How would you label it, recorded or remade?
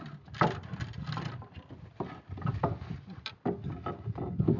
recorded